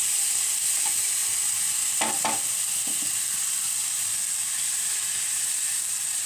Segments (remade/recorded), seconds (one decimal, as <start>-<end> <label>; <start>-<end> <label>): 0.0-0.5 remade; 0.5-6.3 recorded